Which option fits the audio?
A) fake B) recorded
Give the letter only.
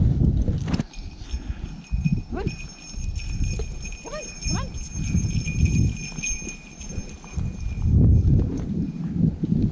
B